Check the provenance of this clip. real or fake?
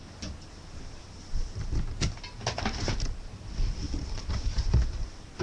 real